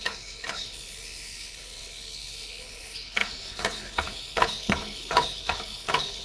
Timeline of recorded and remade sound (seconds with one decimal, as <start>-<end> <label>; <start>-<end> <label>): 0.0-6.2 remade

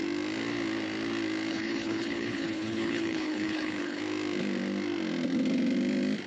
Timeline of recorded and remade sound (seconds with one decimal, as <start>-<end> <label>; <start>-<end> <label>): 0.0-1.5 recorded; 1.5-4.0 remade; 4.0-6.3 recorded

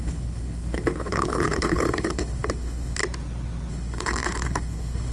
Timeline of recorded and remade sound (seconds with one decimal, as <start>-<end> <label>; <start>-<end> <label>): 0.0-3.0 remade; 3.0-3.7 recorded; 3.7-5.1 remade

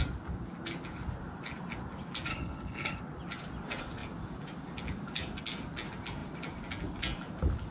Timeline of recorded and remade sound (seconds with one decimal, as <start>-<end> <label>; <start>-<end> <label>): 0.0-2.3 recorded; 2.3-3.0 remade; 3.0-7.7 recorded

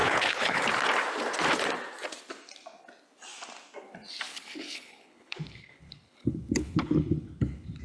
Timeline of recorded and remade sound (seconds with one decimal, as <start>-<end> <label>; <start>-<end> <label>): 0.0-0.6 remade; 0.6-4.3 recorded; 4.3-7.8 remade

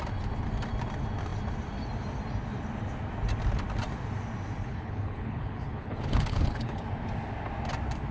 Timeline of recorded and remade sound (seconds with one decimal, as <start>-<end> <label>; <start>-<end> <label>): 0.0-4.6 recorded; 4.6-6.8 remade; 6.8-8.1 recorded